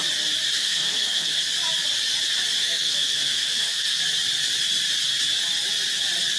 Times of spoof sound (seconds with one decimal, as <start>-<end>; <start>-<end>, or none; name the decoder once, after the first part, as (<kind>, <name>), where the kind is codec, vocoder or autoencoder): 0.6-1.4 (codec, SNAC); 2.6-4.0